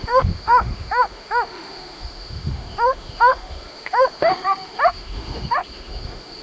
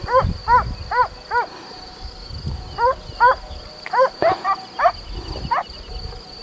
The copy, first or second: first